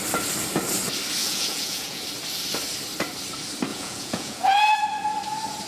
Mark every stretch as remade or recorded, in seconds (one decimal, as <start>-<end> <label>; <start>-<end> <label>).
0.0-1.2 recorded; 1.2-2.0 remade; 2.0-3.7 recorded; 3.7-4.6 remade; 4.6-5.7 recorded